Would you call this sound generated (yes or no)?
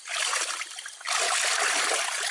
no